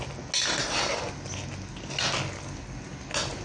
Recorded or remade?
recorded